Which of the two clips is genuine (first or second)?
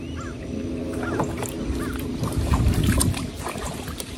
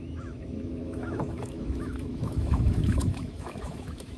first